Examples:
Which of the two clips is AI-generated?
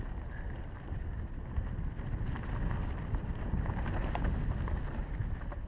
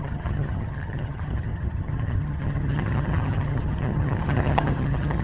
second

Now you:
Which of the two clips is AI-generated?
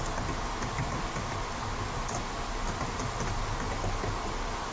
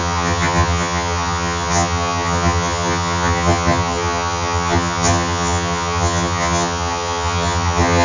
second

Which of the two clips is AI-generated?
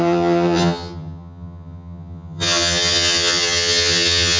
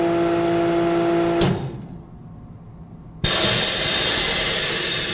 first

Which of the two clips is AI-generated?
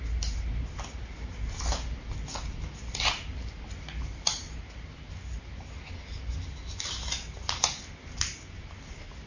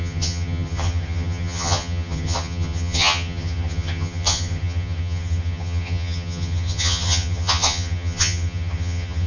second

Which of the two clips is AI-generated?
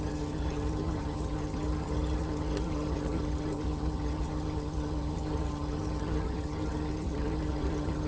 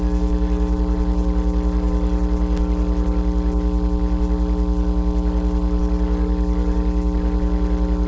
first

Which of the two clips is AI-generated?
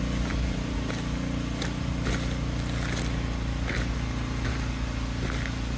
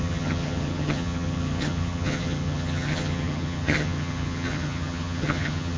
second